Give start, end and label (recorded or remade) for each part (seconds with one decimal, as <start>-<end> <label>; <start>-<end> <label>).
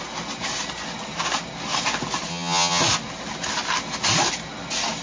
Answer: 0.0-2.3 recorded; 2.3-2.8 remade; 2.8-5.0 recorded